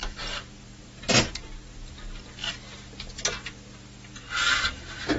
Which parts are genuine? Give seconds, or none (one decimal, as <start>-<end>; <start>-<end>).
0.0-5.2